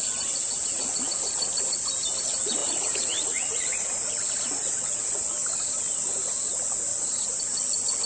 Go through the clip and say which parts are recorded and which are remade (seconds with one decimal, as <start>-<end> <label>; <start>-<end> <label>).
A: 0.0-2.6 recorded; 2.6-4.1 remade; 4.1-6.9 recorded; 6.9-7.4 remade; 7.4-8.1 recorded